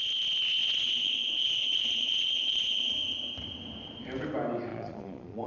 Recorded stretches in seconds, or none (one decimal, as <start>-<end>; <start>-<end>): 0.0-0.6; 2.9-4.7